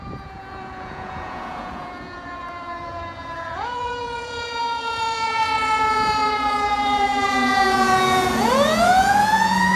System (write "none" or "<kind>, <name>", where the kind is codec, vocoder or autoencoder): vocoder, Vocos